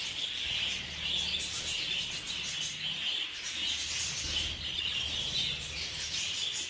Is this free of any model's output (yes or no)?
yes